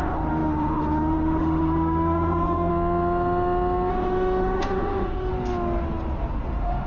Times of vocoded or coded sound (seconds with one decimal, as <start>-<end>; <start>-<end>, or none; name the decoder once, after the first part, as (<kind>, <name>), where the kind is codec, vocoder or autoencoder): 0.0-2.7 (autoencoder, DAC-VAE); 3.9-5.3; 6.4-6.9